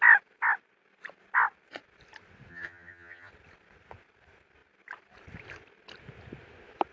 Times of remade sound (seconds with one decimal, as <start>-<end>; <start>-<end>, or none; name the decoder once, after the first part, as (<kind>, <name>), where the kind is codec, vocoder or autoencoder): 2.5-3.3 (vocoder, HiFi-GAN)